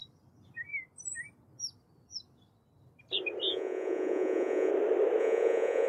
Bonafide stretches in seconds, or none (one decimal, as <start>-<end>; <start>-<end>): 0.0-3.5; 4.7-5.2